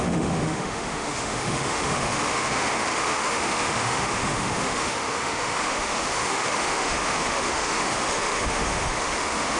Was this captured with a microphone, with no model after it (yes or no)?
no